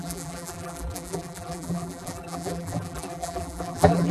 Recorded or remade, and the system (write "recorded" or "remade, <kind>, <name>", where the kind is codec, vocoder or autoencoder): remade, vocoder, BigVGAN v2